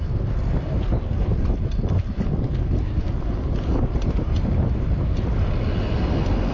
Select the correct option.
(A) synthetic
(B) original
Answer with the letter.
B